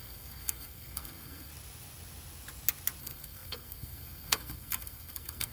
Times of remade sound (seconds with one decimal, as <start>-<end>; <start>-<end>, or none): 0.0-1.5; 3.0-5.5